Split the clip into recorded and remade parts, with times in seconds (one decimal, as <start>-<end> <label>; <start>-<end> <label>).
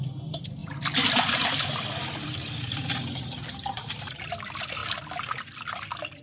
0.0-0.6 recorded; 0.6-3.3 remade; 3.3-4.8 recorded; 4.8-5.7 remade; 5.7-6.2 recorded